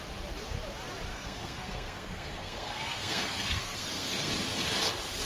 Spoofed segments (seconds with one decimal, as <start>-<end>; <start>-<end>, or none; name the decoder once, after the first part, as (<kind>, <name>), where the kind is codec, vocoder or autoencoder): 1.1-4.3 (codec, SNAC)